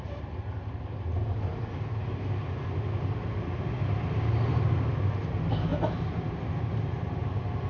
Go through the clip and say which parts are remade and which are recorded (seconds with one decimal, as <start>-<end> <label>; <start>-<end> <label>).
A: 0.0-7.7 recorded